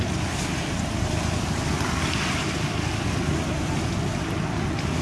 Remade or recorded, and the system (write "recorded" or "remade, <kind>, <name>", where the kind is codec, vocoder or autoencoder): recorded